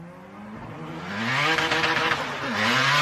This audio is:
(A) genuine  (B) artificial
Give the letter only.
A